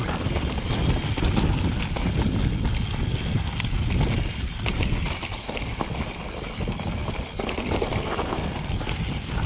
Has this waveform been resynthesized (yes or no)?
no